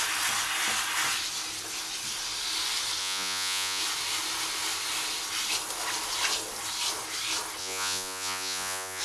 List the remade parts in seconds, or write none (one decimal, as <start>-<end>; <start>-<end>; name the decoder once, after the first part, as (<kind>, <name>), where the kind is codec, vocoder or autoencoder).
3.0-3.8 (vocoder, Vocos); 7.6-9.0